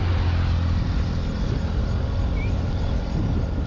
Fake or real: real